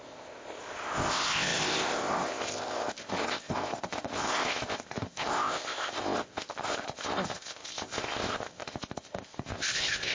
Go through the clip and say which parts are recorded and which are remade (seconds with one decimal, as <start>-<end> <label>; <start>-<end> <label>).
0.0-10.1 remade